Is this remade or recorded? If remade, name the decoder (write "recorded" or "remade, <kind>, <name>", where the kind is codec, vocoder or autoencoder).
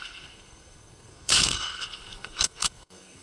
remade, codec, SNAC